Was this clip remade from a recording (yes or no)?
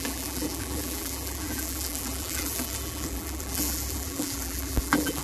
yes